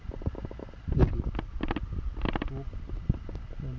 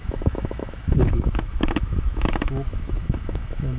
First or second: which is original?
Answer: first